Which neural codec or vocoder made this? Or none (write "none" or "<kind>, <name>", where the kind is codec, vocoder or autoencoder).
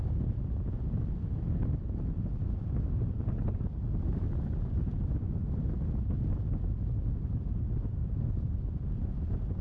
none